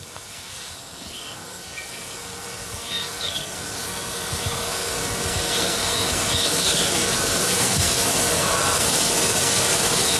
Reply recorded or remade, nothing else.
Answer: remade